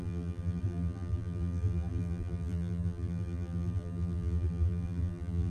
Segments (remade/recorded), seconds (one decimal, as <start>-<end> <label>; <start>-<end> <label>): 0.0-5.5 remade